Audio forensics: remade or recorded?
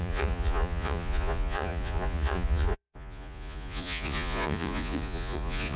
remade